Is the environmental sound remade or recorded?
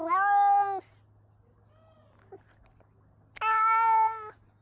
recorded